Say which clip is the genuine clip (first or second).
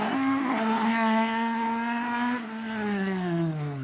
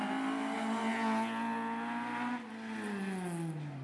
second